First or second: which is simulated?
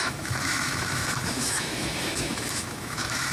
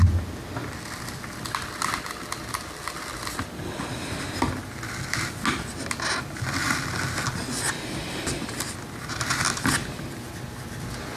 first